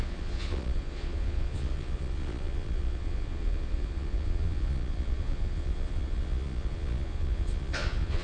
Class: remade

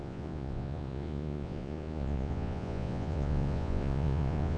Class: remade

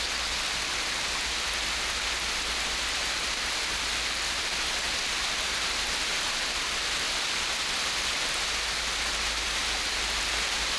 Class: recorded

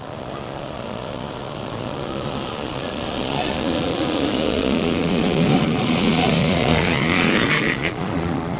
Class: remade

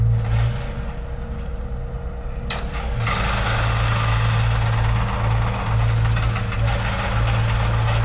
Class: recorded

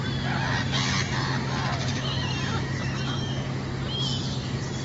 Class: recorded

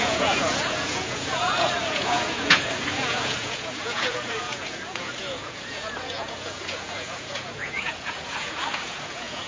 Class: remade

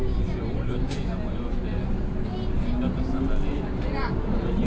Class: recorded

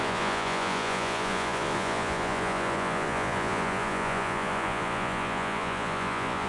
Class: remade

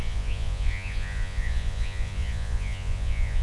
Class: remade